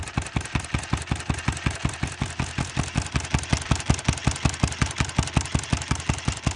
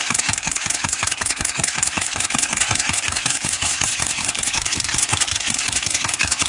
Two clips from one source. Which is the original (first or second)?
first